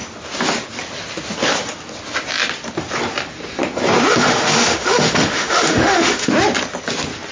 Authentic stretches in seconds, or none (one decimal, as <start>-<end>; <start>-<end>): 0.0-4.1; 6.3-7.3